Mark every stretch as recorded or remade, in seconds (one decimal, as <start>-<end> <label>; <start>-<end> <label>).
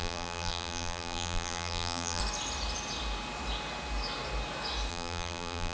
0.0-2.2 remade; 2.2-4.9 recorded; 4.9-5.7 remade